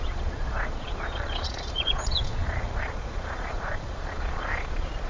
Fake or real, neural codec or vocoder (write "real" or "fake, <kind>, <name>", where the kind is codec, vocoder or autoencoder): fake, vocoder, Vocos